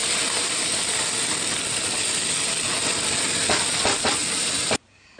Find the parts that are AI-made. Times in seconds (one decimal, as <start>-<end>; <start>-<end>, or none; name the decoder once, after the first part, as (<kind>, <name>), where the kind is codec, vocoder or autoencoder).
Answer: none